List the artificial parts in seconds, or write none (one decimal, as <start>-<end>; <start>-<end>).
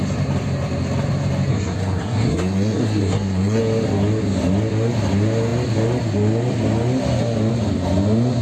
1.5-3.6